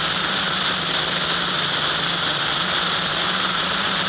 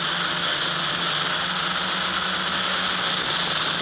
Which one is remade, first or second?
first